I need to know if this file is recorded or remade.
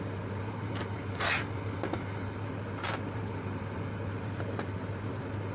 recorded